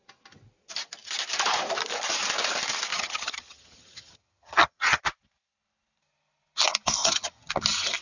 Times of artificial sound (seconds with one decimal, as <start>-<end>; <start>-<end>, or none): 2.9-5.0; 7.0-7.5